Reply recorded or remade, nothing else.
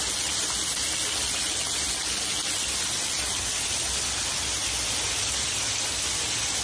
recorded